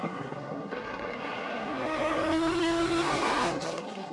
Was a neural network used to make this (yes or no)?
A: yes